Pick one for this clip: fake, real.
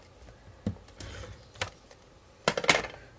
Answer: real